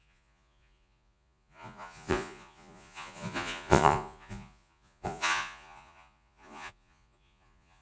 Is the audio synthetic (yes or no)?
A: yes